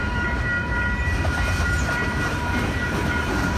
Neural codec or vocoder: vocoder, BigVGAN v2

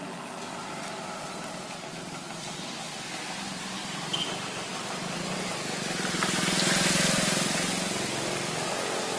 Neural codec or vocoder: none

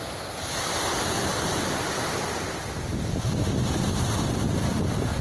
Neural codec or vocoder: none